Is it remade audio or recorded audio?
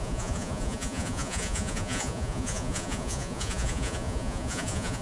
remade